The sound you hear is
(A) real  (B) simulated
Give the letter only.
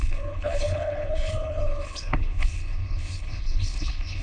B